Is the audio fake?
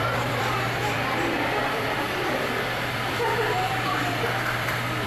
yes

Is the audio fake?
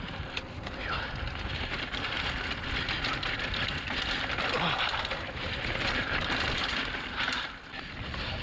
yes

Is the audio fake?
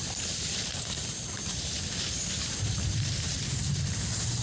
yes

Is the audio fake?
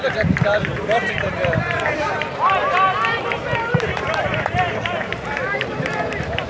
yes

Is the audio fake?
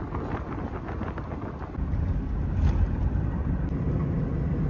no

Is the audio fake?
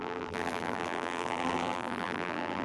yes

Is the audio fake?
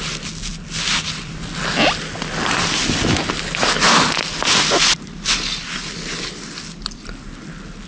no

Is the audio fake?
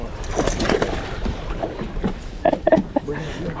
yes